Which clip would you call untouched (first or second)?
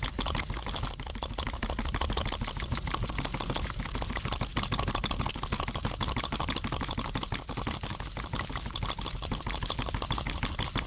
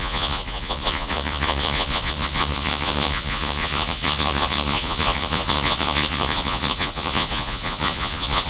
first